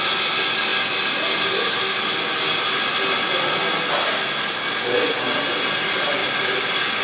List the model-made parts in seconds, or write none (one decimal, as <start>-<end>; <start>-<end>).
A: none